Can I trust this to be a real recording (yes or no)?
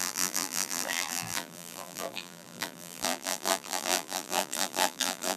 no